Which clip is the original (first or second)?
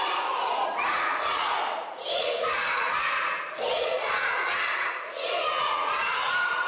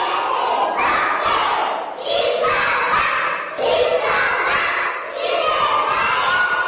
second